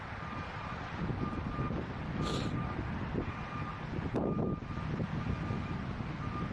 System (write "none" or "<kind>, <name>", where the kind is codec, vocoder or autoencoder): none